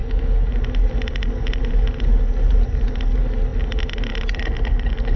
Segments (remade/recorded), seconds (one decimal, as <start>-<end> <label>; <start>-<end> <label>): 0.0-5.2 recorded